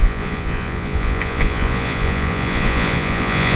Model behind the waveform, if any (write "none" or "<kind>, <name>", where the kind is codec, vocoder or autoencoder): vocoder, Vocos